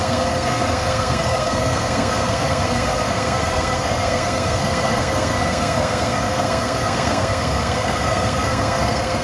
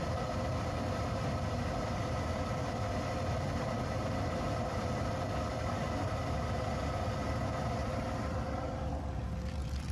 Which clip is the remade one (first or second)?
first